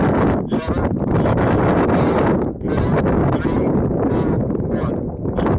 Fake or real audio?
real